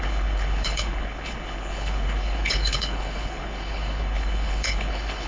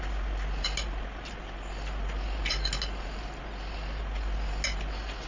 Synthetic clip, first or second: first